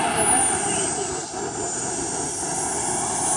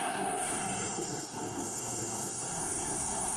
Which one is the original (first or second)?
first